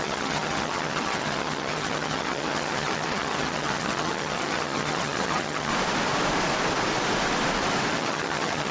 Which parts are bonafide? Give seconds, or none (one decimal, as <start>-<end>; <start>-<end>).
5.7-7.9